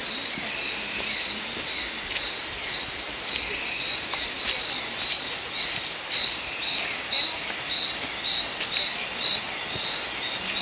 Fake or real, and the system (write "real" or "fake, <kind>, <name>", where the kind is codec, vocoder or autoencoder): real